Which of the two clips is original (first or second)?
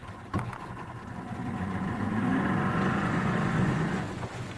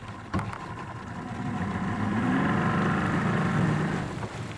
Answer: second